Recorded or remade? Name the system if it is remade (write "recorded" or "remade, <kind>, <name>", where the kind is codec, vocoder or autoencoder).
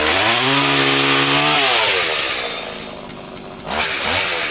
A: recorded